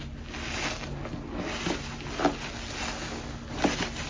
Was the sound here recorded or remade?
recorded